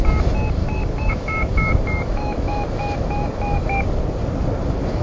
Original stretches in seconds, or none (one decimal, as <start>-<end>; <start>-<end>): 0.0-0.6; 3.6-5.0